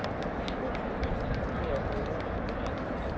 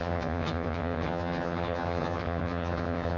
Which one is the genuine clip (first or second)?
first